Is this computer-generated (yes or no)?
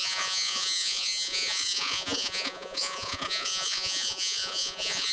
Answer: yes